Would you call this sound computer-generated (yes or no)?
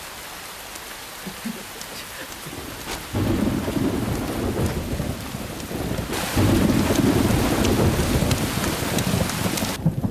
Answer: no